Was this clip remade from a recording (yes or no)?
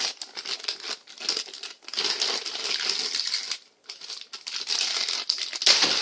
no